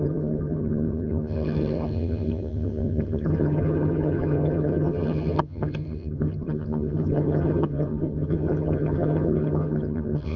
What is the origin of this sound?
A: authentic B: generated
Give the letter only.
B